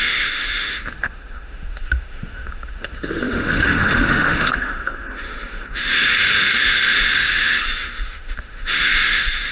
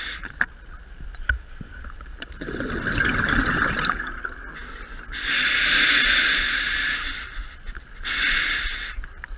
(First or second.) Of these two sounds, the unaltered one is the second